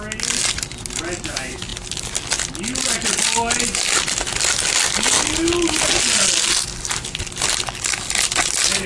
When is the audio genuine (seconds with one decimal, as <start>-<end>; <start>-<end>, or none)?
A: 0.0-8.9